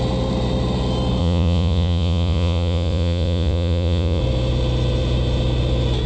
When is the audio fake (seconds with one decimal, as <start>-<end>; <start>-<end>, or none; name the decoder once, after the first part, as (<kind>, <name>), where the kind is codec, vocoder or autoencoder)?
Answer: 1.2-4.2 (vocoder, Vocos)